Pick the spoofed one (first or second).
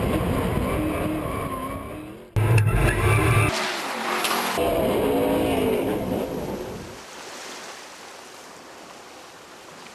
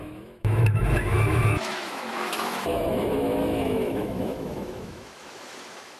second